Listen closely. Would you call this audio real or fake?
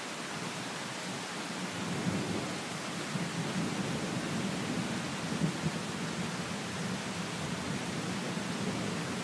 real